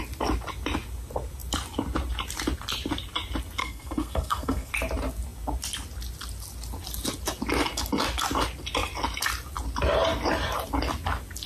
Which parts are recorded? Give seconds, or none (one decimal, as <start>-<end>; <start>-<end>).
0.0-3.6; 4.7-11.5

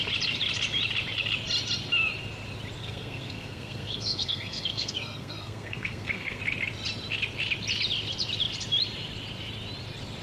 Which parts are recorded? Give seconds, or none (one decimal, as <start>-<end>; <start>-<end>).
0.0-2.8; 6.4-10.2

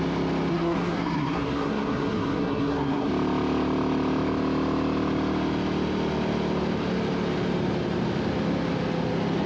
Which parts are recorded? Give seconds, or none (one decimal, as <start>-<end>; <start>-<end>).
0.0-0.5; 3.1-9.5

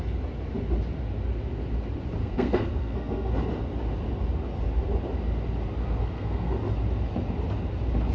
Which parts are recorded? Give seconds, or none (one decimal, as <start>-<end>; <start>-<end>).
0.0-2.2; 3.3-5.8; 6.5-8.1

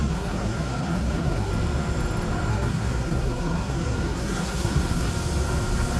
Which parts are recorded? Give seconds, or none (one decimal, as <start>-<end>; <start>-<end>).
1.5-2.5; 5.1-6.0

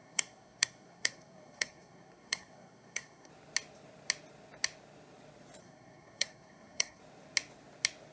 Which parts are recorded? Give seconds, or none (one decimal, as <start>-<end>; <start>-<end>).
3.3-5.6; 7.0-8.1

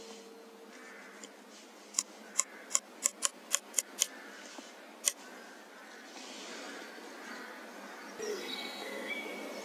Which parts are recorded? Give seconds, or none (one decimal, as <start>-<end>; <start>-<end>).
0.0-8.3; 9.1-9.6

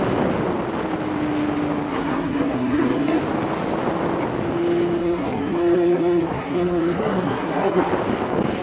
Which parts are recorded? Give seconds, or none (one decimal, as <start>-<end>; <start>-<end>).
0.0-1.9; 3.2-5.0; 7.9-8.6